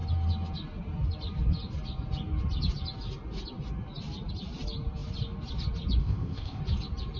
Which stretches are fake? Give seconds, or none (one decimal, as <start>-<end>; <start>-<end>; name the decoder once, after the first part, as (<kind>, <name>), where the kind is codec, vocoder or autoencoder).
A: 6.0-6.6 (codec, ZipCodec)